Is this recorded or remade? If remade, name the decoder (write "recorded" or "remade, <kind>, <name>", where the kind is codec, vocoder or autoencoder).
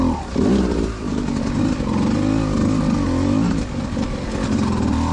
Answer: recorded